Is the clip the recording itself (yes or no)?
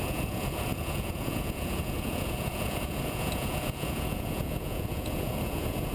no